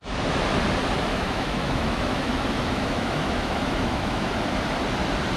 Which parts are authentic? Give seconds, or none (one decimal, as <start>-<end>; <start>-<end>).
0.0-1.1; 4.3-5.4